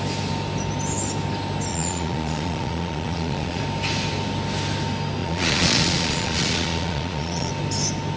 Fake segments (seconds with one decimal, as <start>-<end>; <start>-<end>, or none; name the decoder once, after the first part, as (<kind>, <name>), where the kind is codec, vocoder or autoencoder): 1.7-3.6 (vocoder, Vocos); 5.2-7.5